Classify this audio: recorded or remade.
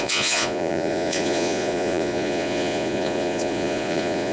remade